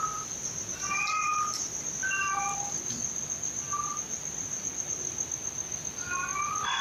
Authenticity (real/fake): real